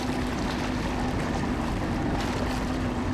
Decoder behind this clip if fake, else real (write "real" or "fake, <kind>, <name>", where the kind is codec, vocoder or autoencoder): real